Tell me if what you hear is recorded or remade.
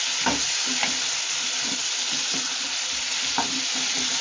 recorded